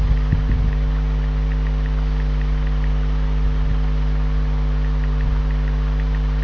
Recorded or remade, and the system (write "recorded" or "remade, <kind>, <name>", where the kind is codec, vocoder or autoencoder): recorded